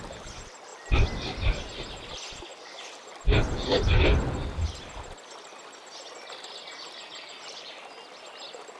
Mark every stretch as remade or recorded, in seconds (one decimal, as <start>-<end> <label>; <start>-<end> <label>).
0.0-7.1 recorded; 7.1-7.8 remade; 7.8-8.8 recorded